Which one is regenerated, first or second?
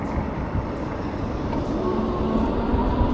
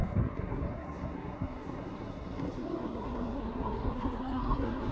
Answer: second